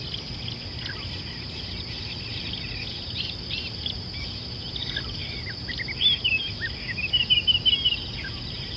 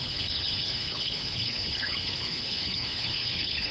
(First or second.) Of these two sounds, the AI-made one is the second